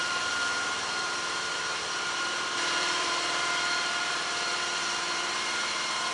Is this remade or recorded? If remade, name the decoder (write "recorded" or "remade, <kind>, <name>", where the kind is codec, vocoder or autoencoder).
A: remade, vocoder, BigVGAN v2